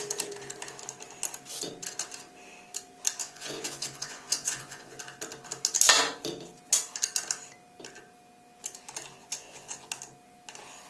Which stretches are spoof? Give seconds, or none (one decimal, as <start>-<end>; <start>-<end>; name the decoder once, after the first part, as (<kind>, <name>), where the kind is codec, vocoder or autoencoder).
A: 3.2-5.0 (vocoder, Vocos); 9.2-9.9